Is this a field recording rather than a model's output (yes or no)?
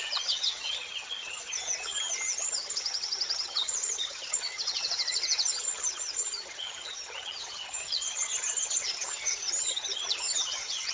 no